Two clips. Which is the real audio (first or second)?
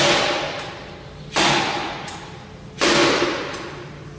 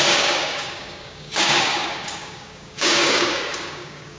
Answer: first